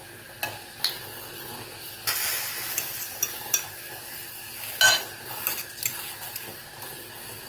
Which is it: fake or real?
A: real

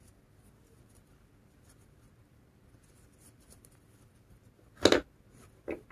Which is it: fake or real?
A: real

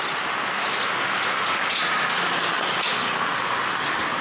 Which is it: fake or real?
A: real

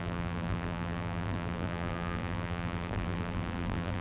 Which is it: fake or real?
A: fake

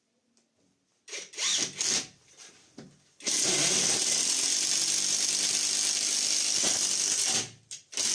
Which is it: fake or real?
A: real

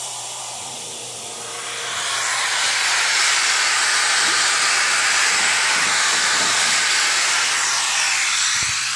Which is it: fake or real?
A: fake